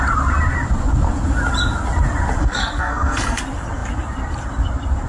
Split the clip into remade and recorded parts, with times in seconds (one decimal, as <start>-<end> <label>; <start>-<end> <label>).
0.0-2.4 recorded; 2.4-3.4 remade; 3.4-5.1 recorded